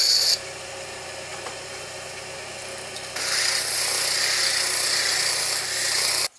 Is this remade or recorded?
recorded